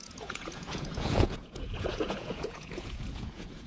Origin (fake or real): fake